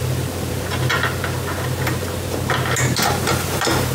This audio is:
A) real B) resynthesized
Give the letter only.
A